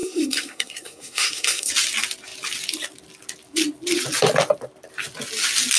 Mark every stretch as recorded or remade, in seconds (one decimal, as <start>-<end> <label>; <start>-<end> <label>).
0.0-1.7 remade; 1.7-5.8 recorded